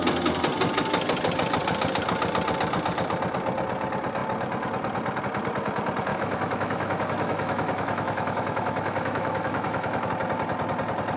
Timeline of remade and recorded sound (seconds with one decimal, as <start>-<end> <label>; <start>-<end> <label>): 0.0-6.1 recorded; 6.1-10.1 remade; 10.1-11.2 recorded